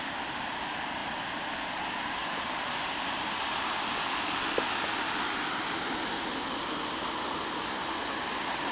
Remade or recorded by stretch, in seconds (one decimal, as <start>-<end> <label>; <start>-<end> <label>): 0.0-8.7 recorded

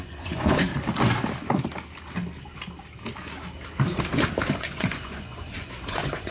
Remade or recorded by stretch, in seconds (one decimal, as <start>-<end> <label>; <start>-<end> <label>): 0.0-0.7 remade; 0.7-4.5 recorded; 4.5-6.3 remade

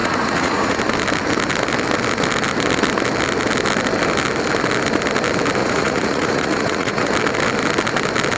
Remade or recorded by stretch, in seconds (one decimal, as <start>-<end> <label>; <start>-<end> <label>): 0.0-0.8 remade; 0.8-5.6 recorded; 5.6-7.1 remade; 7.1-8.4 recorded

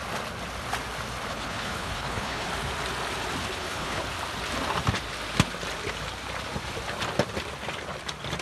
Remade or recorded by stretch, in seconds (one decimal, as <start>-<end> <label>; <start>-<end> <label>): 0.0-1.3 recorded; 1.3-2.5 remade; 2.5-3.4 recorded; 3.4-4.0 remade; 4.0-8.4 recorded